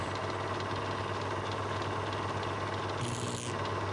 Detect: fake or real real